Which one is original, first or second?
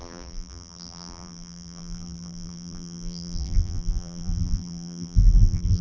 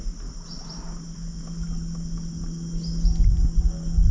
second